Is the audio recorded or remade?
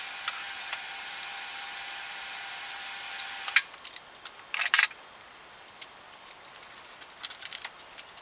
remade